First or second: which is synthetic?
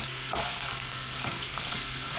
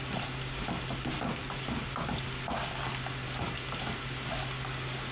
first